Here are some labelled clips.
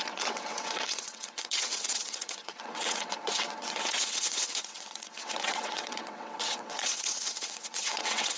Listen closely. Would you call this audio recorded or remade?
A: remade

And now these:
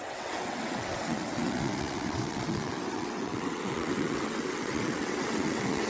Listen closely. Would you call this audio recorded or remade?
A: remade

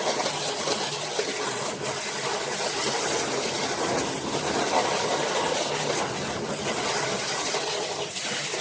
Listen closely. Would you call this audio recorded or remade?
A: recorded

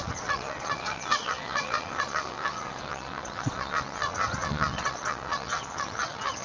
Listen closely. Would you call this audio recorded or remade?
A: remade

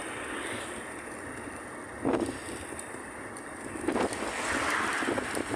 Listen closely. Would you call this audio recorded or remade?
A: recorded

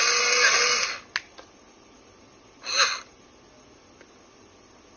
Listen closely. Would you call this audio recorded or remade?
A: recorded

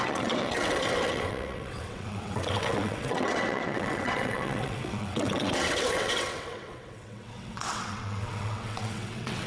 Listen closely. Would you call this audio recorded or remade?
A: remade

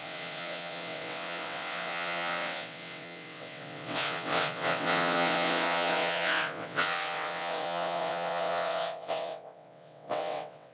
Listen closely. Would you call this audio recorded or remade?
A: remade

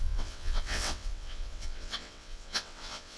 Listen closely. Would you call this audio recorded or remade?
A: remade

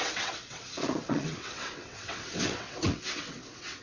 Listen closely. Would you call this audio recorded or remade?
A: remade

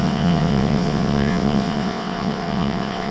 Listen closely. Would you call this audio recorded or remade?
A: remade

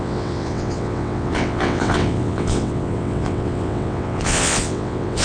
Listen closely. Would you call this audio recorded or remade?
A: remade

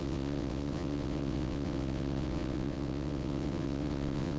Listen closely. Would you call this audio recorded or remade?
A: remade